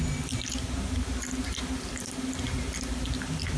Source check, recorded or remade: recorded